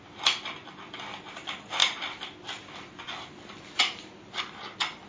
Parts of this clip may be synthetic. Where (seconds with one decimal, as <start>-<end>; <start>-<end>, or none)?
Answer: none